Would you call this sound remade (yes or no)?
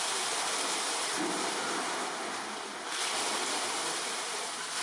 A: no